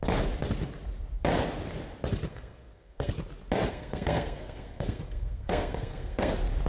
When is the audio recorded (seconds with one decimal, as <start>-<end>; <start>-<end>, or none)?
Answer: 0.0-2.3; 3.1-3.7; 6.3-6.7